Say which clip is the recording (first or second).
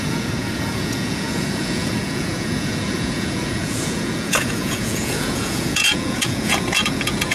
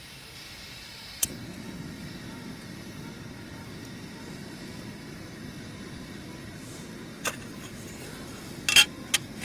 second